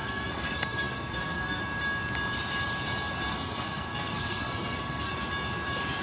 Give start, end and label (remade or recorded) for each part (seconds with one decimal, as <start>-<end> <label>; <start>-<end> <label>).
0.0-1.6 remade; 1.6-3.3 recorded; 3.3-5.1 remade; 5.1-6.0 recorded